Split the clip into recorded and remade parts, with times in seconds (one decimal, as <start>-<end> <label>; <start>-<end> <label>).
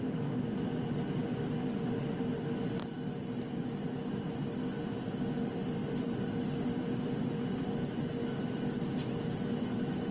0.0-10.1 recorded